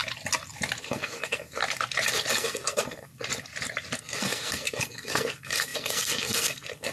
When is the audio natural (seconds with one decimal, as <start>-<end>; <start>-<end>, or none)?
0.0-0.8; 1.6-2.3; 3.1-4.0